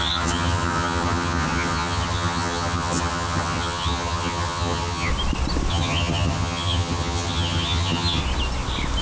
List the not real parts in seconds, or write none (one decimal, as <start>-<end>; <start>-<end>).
0.0-5.1; 5.7-8.2